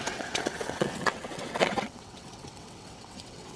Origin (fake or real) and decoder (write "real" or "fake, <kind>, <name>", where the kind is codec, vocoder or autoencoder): fake, vocoder, WaveNeXt